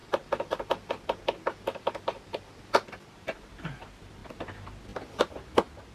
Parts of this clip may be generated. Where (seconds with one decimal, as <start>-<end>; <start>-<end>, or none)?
0.0-3.5